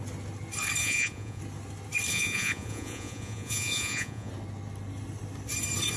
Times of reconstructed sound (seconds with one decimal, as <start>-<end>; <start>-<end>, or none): 0.8-1.4; 2.1-4.3